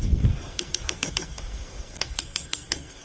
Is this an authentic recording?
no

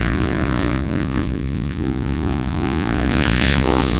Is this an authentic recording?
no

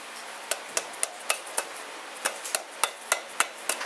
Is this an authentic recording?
yes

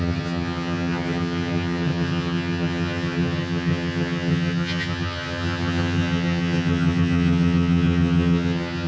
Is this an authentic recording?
no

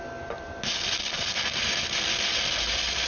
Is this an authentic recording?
yes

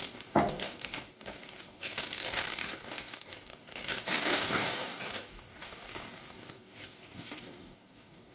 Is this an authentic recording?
no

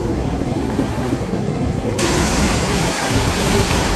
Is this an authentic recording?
no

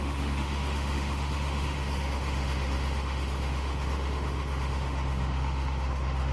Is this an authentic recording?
no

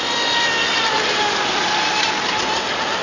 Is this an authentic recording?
yes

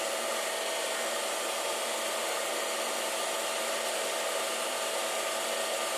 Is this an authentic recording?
no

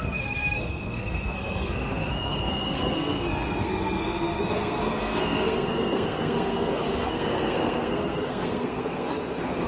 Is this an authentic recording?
no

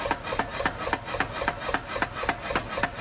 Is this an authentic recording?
yes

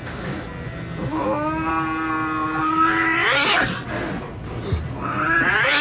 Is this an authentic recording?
yes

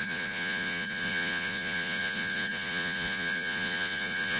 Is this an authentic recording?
no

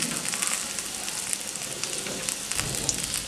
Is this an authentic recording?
yes